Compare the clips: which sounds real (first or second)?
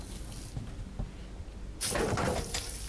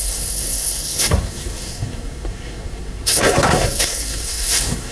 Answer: first